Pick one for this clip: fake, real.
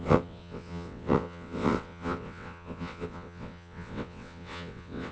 fake